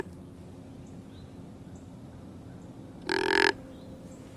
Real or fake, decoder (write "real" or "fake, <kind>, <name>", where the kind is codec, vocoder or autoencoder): real